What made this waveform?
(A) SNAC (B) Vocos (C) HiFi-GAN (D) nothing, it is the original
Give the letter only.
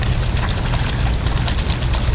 D